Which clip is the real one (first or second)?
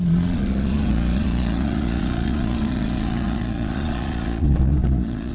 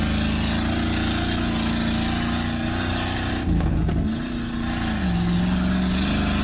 second